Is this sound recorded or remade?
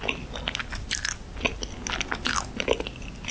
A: recorded